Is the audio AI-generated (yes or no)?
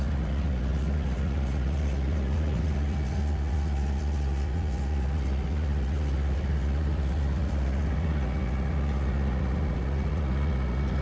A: yes